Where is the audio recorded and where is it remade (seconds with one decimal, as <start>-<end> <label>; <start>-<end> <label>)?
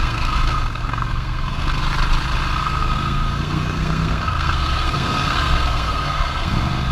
0.0-1.8 remade; 1.8-2.6 recorded; 2.6-6.9 remade